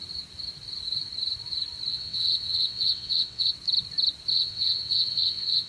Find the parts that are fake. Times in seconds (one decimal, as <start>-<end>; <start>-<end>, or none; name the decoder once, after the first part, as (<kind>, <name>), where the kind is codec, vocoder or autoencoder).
1.9-3.5 (vocoder, WaveNeXt); 4.3-5.7